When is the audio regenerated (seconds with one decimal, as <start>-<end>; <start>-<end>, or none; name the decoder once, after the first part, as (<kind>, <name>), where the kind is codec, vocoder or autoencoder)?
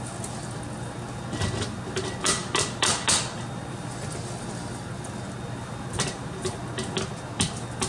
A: none